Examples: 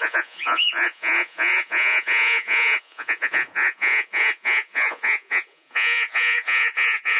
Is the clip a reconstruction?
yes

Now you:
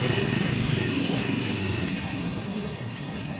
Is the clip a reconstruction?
yes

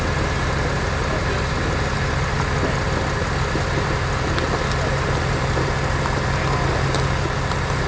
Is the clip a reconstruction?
no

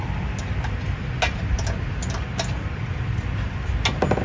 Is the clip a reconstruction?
no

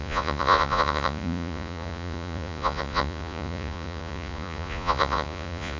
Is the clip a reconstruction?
yes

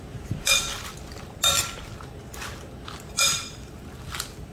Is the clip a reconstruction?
no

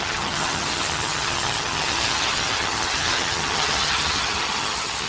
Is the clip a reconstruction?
yes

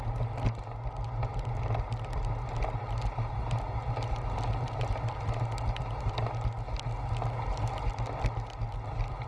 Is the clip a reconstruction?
no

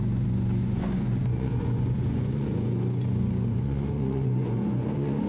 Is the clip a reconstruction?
yes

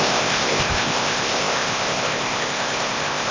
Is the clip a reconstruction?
yes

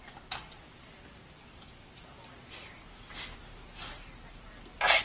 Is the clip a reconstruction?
no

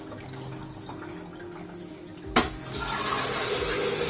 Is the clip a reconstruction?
no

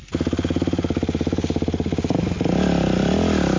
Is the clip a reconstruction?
no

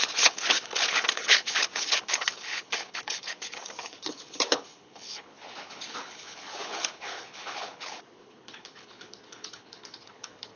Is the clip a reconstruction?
yes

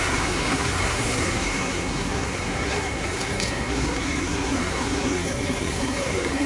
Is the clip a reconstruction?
yes